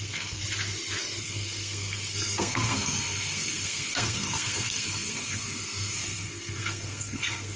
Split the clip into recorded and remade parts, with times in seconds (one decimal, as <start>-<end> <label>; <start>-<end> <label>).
0.0-0.4 remade; 0.4-1.2 recorded; 1.2-7.6 remade